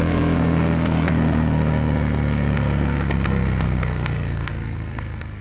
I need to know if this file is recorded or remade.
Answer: remade